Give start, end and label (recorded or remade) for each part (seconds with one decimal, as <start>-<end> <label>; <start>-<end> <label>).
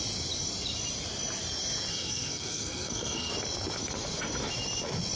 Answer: 0.0-1.9 recorded; 1.9-3.3 remade; 3.3-5.2 recorded